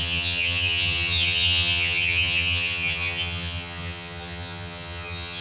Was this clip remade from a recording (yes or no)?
yes